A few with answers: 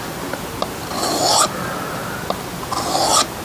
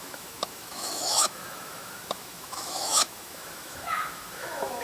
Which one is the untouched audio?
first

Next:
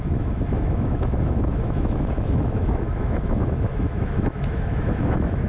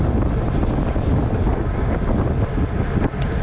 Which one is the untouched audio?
second